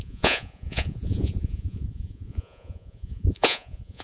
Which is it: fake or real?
fake